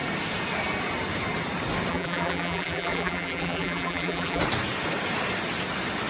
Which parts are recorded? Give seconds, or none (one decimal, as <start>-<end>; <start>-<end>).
0.0-1.9; 4.4-6.1